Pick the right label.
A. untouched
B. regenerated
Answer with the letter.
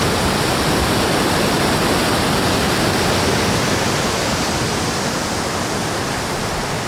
A